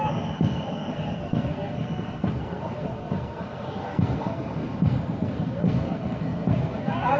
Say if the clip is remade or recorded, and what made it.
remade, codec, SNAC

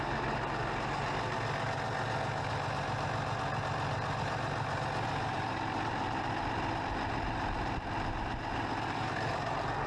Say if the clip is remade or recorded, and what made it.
recorded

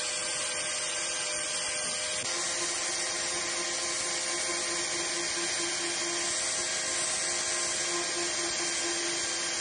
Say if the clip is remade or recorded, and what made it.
recorded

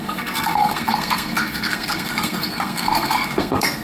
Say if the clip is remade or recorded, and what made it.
remade, codec, SNAC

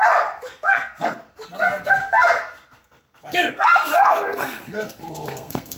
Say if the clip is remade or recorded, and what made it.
remade, codec, SNAC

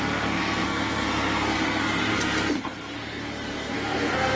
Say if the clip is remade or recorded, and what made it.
remade, codec, SNAC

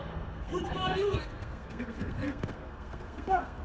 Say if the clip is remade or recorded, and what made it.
remade, codec, SNAC